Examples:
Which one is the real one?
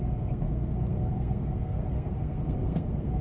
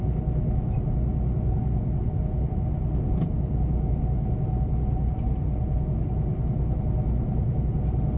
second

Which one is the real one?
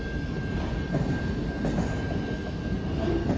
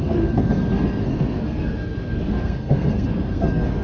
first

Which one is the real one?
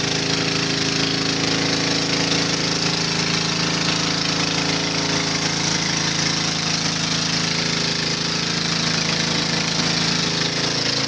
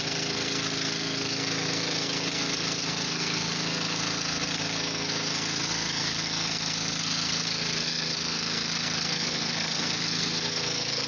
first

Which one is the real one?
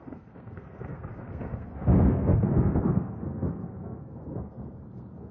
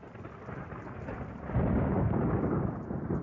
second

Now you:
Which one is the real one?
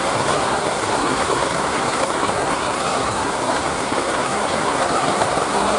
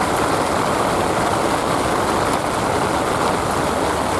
second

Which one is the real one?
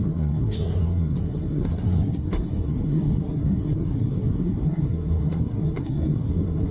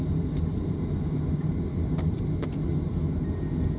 second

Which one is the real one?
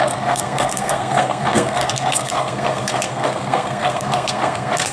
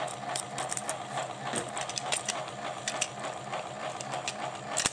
second